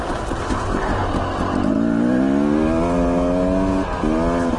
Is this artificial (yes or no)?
no